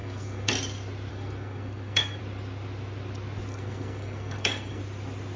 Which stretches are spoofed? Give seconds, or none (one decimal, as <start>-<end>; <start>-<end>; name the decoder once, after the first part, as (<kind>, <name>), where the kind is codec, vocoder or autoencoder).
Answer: 0.0-0.5 (codec, SNAC); 1.1-2.2; 3.5-4.8